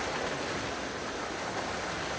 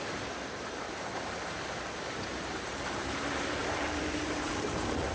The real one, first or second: first